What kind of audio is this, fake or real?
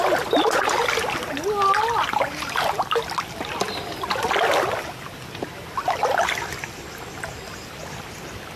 real